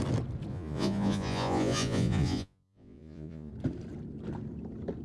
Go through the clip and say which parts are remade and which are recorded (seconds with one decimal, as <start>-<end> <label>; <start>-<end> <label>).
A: 0.0-0.5 recorded; 0.5-3.5 remade; 3.5-5.0 recorded